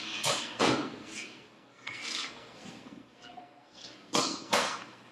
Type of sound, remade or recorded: remade